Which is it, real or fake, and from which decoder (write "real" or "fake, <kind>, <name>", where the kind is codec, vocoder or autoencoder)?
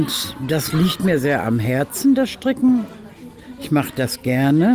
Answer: real